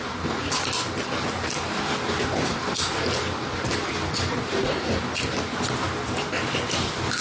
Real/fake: real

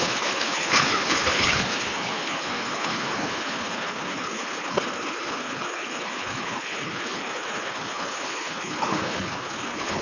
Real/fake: fake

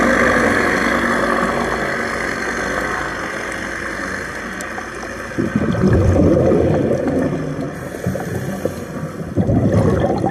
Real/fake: real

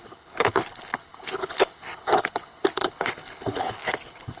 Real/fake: fake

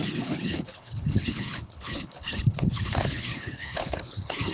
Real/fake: fake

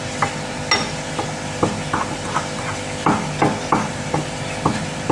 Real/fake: real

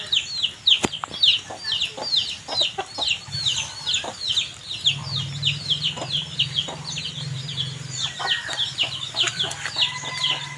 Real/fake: real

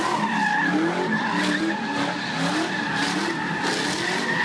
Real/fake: real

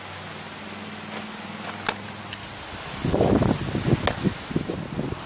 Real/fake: real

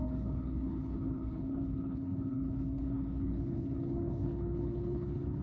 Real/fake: fake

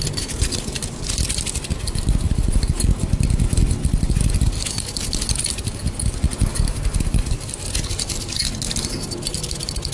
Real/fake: real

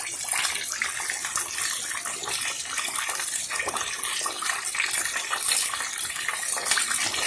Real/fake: real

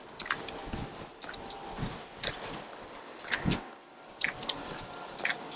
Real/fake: real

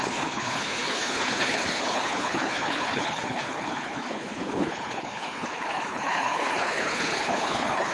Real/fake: fake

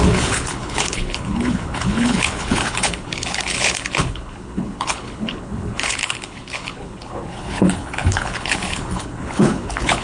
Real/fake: fake